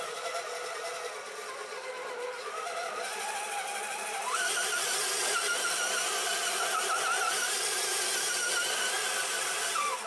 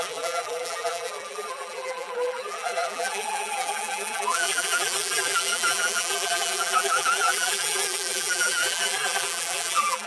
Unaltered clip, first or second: first